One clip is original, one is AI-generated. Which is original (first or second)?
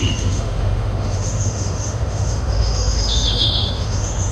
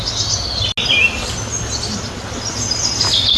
second